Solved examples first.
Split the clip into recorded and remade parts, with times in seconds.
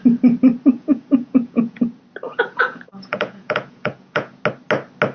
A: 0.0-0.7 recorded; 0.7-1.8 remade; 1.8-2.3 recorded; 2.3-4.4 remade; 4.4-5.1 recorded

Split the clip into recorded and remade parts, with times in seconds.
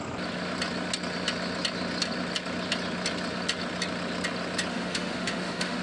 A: 0.0-4.7 recorded; 4.7-5.8 remade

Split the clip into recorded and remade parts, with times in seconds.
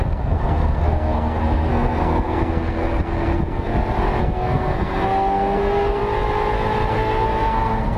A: 0.0-3.7 remade; 3.7-4.2 recorded; 4.2-6.0 remade; 6.0-6.9 recorded; 6.9-8.0 remade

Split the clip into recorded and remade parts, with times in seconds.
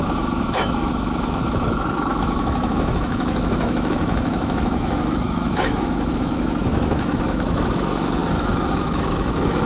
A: 0.0-9.7 remade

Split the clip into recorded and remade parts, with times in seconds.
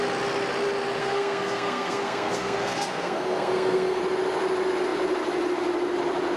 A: 0.0-1.0 recorded; 1.0-4.0 remade; 4.0-6.4 recorded